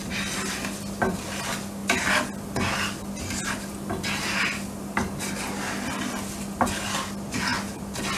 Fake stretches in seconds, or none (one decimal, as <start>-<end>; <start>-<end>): none